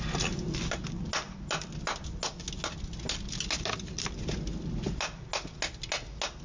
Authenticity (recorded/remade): recorded